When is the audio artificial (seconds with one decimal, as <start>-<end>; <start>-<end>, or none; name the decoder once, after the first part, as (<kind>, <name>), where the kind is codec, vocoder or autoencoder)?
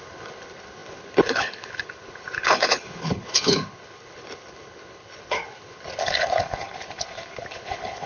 0.0-8.1 (codec, HILCodec)